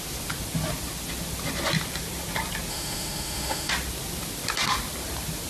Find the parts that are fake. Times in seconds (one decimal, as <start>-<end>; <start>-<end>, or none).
2.7-3.7